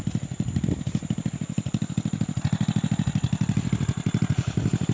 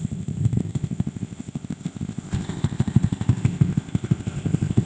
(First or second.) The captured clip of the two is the first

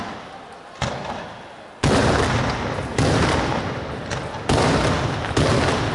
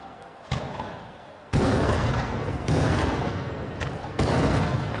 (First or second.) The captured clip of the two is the first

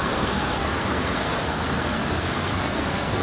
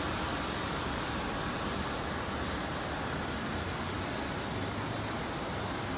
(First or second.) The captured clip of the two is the second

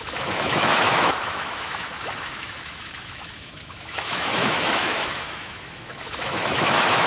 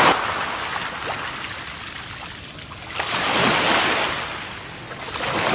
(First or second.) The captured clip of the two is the second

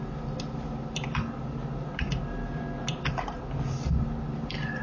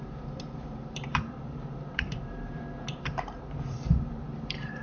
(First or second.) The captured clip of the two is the first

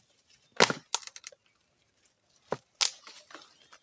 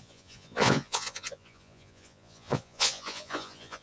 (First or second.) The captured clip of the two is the first